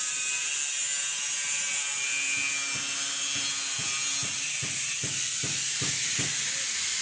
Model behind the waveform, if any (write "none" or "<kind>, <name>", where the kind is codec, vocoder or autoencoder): none